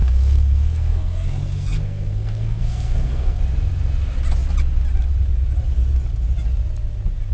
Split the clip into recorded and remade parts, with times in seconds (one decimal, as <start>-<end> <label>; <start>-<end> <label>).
0.0-3.4 remade; 3.4-7.3 recorded